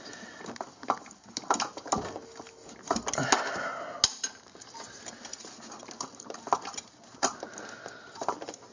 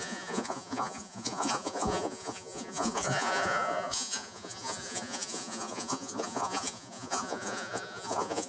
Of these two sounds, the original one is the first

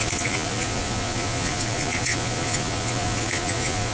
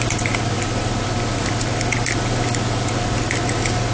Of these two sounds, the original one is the second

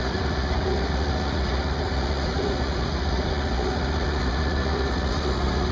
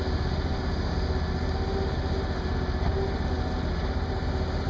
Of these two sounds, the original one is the second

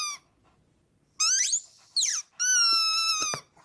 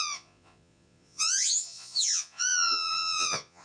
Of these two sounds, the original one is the first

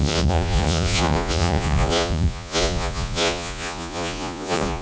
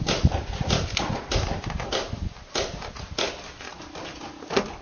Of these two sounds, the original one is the second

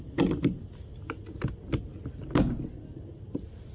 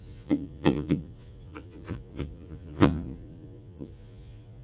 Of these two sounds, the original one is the first